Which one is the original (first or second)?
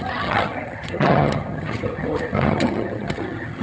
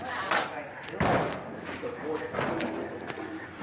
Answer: second